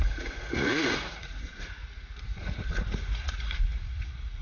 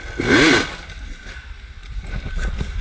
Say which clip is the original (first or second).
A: second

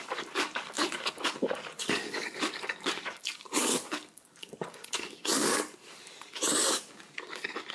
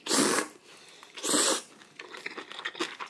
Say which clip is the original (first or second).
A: second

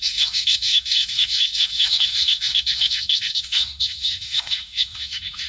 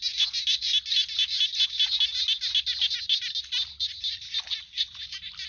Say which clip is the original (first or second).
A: second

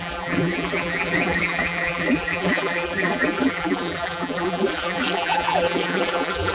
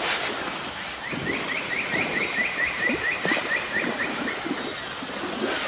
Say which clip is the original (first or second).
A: second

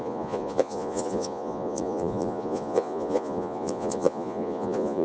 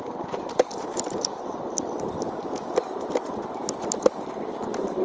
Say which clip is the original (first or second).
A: second